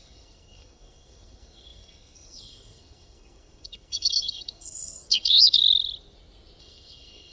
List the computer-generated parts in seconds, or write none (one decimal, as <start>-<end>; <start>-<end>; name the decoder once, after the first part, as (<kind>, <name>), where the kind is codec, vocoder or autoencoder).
0.0-5.6 (codec, SNAC); 6.6-7.3